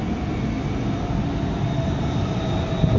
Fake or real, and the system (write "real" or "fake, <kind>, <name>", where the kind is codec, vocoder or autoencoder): real